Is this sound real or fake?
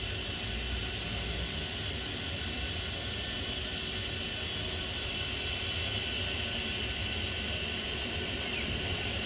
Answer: real